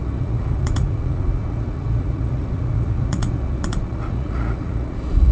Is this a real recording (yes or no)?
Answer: no